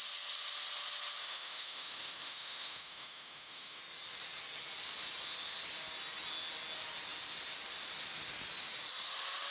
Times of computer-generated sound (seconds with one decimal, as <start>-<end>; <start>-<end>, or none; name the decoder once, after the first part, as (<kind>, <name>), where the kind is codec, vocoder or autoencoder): 1.2-3.8 (autoencoder, DAC-VAE)